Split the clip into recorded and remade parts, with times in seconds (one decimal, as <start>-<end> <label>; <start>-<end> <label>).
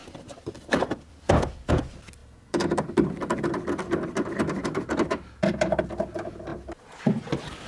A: 0.0-1.7 remade; 1.7-2.2 recorded; 2.2-5.8 remade; 5.8-6.5 recorded; 6.5-7.3 remade; 7.3-7.7 recorded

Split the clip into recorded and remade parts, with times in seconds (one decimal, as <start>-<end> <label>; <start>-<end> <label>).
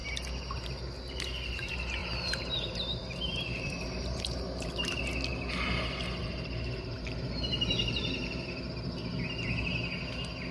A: 0.0-2.0 recorded; 2.0-4.7 remade; 4.7-6.2 recorded; 6.2-8.4 remade; 8.4-10.5 recorded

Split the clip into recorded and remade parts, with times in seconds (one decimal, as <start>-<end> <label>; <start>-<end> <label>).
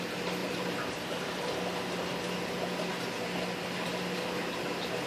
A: 0.0-0.4 recorded; 0.4-1.4 remade; 1.4-5.1 recorded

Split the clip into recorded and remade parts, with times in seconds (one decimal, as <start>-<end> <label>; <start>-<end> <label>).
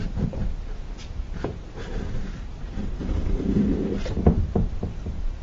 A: 0.0-0.4 remade; 0.4-1.1 recorded; 1.1-5.4 remade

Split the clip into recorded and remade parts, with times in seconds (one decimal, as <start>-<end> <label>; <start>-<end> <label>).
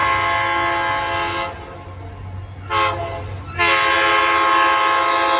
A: 0.0-5.4 recorded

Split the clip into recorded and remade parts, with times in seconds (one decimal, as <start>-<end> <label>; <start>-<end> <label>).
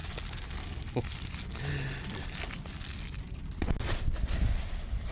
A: 0.0-5.1 recorded